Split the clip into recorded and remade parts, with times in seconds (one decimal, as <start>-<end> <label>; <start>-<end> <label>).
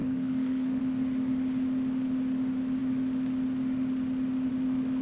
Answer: 0.0-0.8 remade; 0.8-5.0 recorded